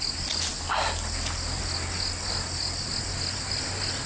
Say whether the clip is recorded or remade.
recorded